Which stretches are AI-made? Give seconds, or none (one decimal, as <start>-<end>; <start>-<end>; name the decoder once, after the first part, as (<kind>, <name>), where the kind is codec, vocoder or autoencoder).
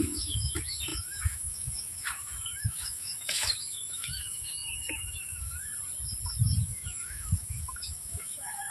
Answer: 0.0-5.7 (autoencoder, DAC-VAE); 6.6-8.7